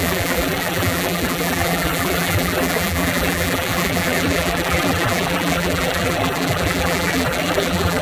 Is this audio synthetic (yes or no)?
yes